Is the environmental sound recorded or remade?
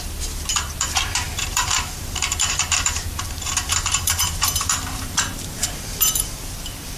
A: remade